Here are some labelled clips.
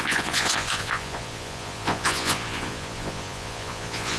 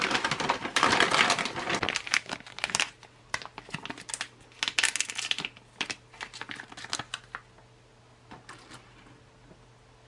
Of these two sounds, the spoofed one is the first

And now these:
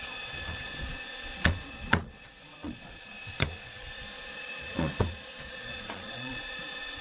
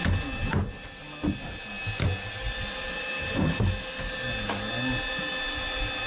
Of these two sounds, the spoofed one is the first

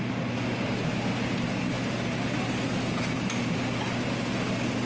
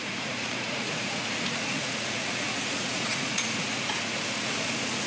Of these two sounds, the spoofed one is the second